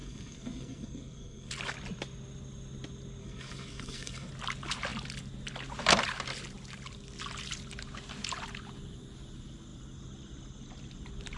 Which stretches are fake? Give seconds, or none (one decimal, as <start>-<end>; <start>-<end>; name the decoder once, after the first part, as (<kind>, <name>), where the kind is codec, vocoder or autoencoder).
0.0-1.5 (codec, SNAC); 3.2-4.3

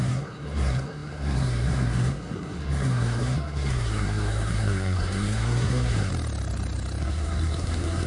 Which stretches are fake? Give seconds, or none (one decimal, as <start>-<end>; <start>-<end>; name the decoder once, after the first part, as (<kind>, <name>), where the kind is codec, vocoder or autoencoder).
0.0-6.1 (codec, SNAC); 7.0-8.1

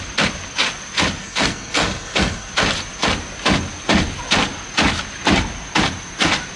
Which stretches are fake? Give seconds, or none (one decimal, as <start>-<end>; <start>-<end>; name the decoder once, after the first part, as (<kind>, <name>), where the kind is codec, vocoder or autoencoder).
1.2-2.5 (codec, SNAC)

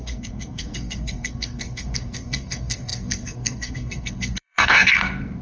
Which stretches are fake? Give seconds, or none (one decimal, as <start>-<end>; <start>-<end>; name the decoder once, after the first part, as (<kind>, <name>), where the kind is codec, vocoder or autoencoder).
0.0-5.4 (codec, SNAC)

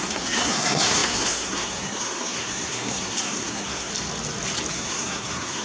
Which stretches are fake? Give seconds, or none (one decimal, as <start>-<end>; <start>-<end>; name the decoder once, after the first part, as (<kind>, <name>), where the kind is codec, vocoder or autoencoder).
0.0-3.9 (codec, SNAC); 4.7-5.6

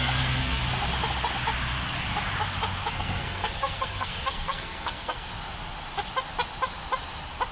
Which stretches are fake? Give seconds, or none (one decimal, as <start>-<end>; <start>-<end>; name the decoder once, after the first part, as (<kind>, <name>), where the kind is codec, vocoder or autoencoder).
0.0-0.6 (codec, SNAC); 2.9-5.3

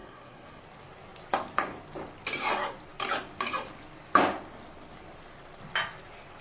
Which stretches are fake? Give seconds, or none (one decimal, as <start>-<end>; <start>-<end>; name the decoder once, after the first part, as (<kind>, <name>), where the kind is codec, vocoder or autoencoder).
0.0-0.6 (codec, SNAC)

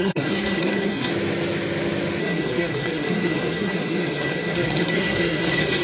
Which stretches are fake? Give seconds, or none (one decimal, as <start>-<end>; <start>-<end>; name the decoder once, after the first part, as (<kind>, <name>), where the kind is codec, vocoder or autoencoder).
0.0-1.1 (codec, SNAC); 2.2-5.8